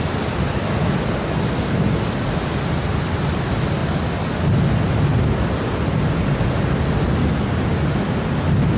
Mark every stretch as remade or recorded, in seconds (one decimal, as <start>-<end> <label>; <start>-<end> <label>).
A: 0.0-8.8 recorded